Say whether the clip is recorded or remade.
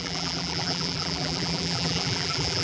remade